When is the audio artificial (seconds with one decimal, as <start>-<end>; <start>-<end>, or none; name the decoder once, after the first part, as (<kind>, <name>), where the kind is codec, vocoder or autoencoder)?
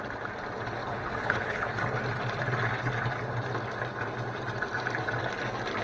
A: 0.8-1.7 (codec, HILCodec)